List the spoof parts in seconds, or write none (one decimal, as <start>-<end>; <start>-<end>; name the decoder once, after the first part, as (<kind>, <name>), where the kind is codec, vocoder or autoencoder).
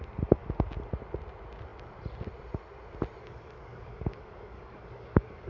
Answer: 3.2-5.5 (codec, DAC)